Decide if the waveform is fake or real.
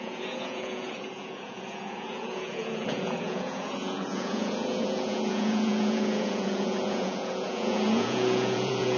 fake